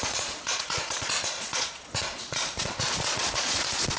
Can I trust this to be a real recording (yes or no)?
no